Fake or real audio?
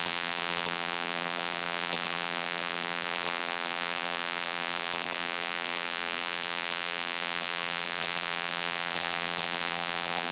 fake